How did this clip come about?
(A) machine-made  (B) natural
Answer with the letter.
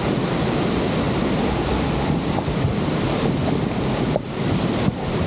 B